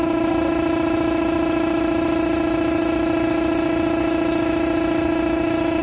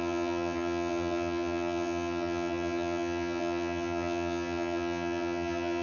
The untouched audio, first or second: first